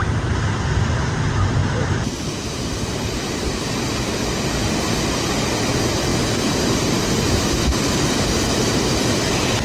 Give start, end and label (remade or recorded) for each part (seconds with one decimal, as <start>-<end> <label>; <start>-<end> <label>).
0.0-1.6 recorded; 1.6-3.7 remade; 3.7-9.6 recorded

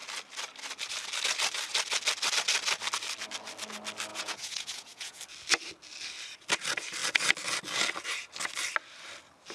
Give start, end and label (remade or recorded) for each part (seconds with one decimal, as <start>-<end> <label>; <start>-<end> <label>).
0.0-4.1 recorded; 4.1-5.2 remade; 5.2-9.5 recorded

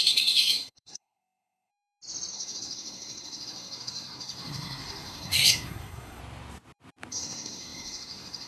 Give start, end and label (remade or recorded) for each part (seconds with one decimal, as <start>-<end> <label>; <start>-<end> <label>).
0.0-1.7 remade; 1.7-2.3 recorded; 2.3-6.2 remade; 6.2-7.1 recorded; 7.1-8.5 remade